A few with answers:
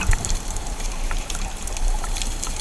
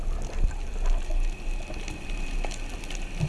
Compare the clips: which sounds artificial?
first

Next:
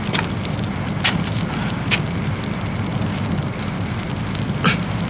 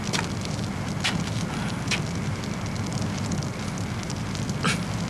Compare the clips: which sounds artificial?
first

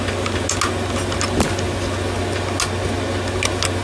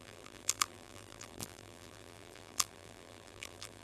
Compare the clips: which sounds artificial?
second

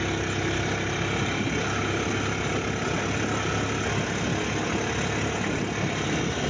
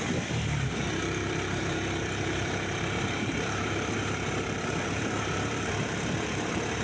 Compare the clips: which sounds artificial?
second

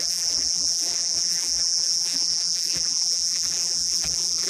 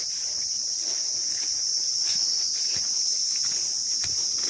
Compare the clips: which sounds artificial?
first